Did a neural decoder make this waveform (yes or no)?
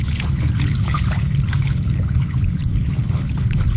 yes